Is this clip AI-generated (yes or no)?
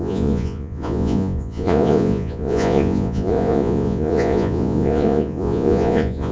yes